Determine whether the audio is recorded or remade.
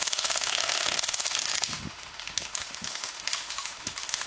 remade